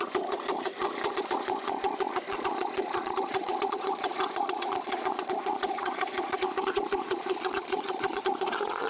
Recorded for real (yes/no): no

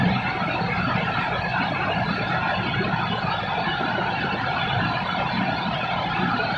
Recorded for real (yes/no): yes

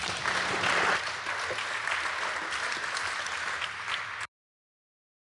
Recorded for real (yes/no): yes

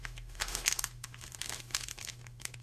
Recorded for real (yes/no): no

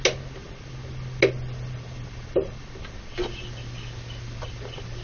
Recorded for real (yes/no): yes